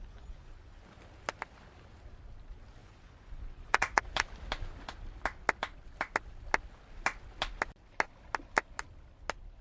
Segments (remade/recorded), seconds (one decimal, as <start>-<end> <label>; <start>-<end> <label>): 0.0-0.8 remade; 0.8-2.8 recorded; 2.8-4.0 remade; 4.0-9.6 recorded